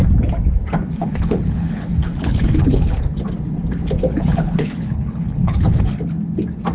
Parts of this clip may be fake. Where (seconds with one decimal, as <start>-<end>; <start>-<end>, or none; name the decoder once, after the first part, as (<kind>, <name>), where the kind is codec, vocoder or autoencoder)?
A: 1.0-3.0 (codec, HILCodec); 4.1-5.8